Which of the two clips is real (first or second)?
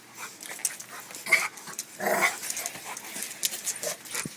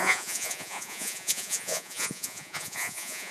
first